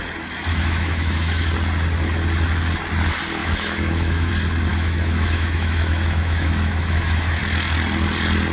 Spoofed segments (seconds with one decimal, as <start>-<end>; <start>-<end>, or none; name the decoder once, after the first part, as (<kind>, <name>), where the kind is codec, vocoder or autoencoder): 0.5-1.5 (autoencoder, DAC-VAE); 3.4-4.3; 4.7-7.4